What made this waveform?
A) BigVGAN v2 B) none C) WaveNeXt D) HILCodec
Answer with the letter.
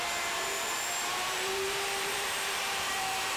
A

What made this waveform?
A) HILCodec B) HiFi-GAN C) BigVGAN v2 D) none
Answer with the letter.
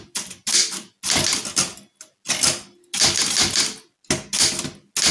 D